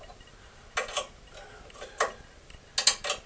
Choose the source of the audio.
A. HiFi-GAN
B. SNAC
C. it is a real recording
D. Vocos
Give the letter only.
C